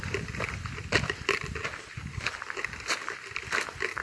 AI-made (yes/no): no